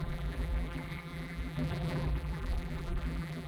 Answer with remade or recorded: remade